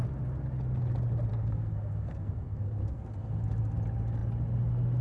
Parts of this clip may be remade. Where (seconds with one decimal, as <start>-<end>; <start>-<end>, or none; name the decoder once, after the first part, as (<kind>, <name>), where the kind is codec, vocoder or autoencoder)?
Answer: 1.3-3.4 (codec, SNAC)